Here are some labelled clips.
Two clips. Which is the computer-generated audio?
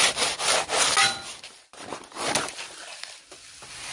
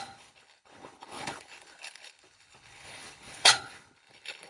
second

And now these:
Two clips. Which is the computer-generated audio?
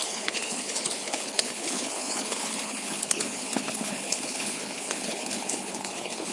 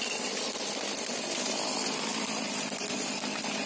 first